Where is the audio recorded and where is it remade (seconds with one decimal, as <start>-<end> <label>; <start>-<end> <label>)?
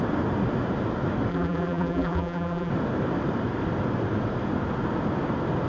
0.0-1.3 recorded; 1.3-2.7 remade; 2.7-5.7 recorded